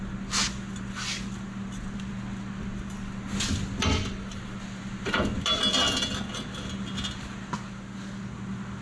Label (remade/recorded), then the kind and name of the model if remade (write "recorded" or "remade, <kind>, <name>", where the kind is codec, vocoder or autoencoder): recorded